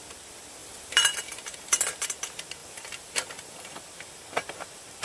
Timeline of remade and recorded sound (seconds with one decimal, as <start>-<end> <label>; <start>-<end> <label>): 0.0-0.6 recorded; 0.6-1.8 remade; 1.8-2.6 recorded; 2.6-3.8 remade; 3.8-5.0 recorded